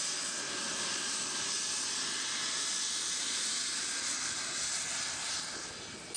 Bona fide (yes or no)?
no